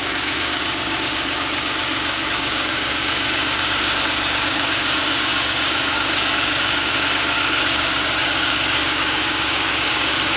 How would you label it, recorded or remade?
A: remade